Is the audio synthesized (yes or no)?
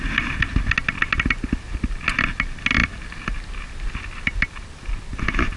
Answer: no